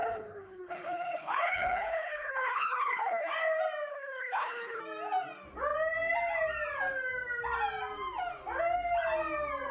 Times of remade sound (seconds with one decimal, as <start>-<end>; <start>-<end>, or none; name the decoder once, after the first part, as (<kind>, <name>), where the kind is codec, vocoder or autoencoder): 0.0-3.3 (codec, HILCodec); 3.9-4.8